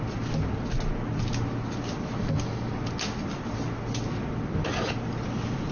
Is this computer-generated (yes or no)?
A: no